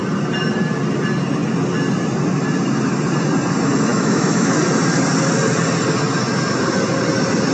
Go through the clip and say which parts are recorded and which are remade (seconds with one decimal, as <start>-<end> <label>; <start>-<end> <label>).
0.0-3.9 recorded; 3.9-4.6 remade; 4.6-7.5 recorded